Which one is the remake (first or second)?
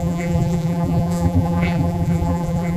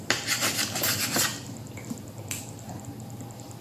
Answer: first